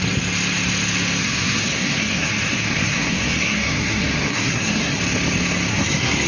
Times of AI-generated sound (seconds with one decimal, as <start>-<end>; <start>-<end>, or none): 1.2-5.0; 5.7-6.3